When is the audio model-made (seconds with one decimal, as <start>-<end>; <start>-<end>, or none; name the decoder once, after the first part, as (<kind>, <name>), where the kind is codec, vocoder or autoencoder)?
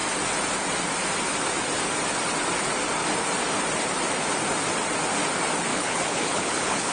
5.7-6.9 (codec, HILCodec)